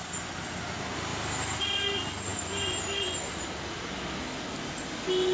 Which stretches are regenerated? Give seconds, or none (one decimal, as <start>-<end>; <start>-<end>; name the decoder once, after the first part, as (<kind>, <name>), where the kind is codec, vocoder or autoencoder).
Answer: none